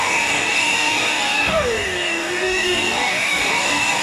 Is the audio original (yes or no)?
no